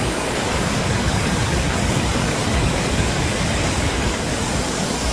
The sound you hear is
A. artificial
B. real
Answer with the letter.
A